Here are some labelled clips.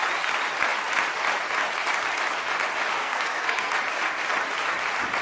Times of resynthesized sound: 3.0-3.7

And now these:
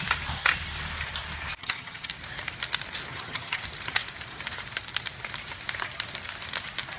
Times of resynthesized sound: 1.6-2.1; 3.1-3.6